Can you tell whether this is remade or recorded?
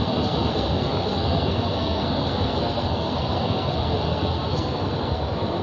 remade